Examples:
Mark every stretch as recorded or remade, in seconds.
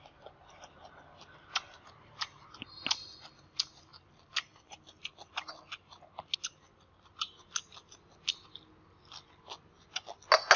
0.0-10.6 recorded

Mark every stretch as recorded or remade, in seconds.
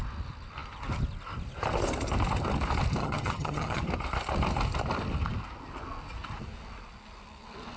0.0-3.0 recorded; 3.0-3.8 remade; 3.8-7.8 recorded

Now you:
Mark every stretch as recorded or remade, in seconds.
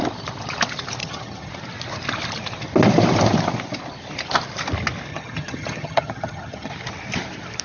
0.0-1.0 recorded; 1.0-1.5 remade; 1.5-5.1 recorded; 5.1-6.7 remade; 6.7-7.6 recorded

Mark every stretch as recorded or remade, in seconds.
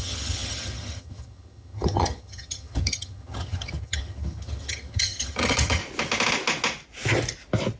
0.0-5.8 remade; 5.8-7.8 recorded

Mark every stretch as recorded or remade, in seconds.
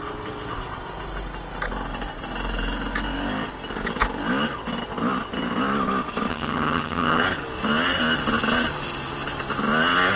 0.0-6.3 recorded; 6.3-7.2 remade; 7.2-10.2 recorded